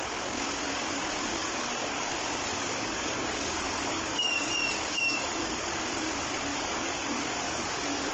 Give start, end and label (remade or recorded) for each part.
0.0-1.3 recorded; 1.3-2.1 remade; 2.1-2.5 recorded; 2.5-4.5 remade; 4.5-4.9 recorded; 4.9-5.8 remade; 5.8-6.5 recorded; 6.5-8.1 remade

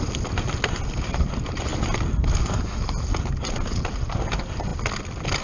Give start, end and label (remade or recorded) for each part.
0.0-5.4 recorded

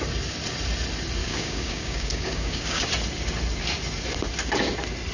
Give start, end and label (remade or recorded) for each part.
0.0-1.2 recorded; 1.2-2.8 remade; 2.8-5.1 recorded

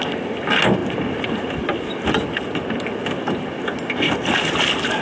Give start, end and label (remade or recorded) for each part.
0.0-5.0 recorded

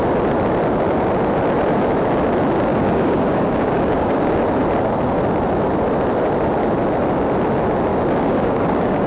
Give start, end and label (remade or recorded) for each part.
0.0-2.7 recorded; 2.7-4.4 remade; 4.4-7.9 recorded; 7.9-9.1 remade

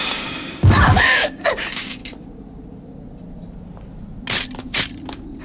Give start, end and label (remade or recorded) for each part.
0.0-2.0 remade; 2.0-5.4 recorded

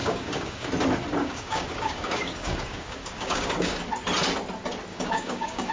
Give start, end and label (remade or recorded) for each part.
0.0-0.7 remade; 0.7-1.2 recorded; 1.2-3.8 remade; 3.8-4.9 recorded; 4.9-5.7 remade

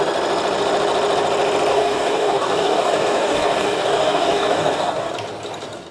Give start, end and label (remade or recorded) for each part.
0.0-1.7 recorded; 1.7-5.1 remade; 5.1-5.9 recorded